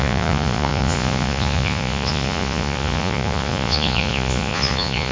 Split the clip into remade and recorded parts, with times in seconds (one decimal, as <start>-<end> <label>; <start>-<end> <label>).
0.0-5.1 remade